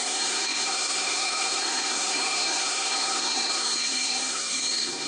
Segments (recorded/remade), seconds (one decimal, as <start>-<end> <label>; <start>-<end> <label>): 0.0-5.1 remade